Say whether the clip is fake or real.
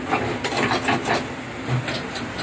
real